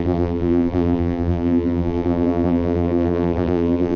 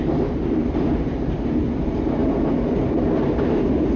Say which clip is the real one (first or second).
second